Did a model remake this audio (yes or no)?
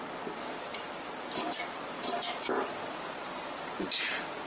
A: yes